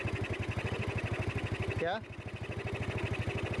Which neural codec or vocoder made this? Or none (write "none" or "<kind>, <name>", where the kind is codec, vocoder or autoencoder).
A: none